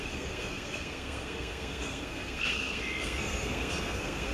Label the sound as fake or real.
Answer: fake